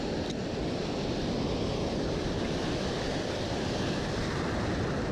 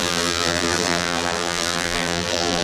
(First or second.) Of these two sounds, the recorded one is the first